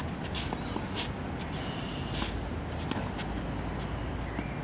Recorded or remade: recorded